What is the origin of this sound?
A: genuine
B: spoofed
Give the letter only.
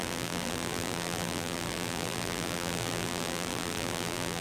B